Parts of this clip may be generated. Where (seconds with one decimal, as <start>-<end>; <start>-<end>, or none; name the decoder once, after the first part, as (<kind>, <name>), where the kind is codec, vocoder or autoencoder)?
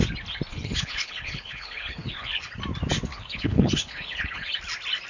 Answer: 0.5-2.4 (codec, HILCodec); 3.1-4.5